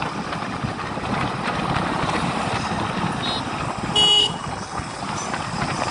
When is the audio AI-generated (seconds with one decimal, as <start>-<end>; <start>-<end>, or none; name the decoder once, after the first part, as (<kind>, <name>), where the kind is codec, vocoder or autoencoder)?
4.2-5.0 (codec, HILCodec)

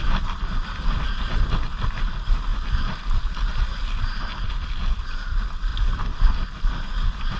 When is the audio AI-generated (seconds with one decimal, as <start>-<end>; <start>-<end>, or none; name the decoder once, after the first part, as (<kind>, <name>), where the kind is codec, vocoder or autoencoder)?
2.5-3.1 (vocoder, BigVGAN v2); 3.7-4.3; 5.7-6.7